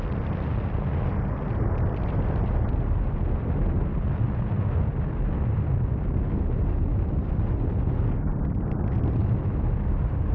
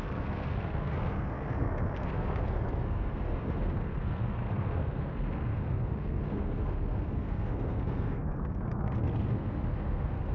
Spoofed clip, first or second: second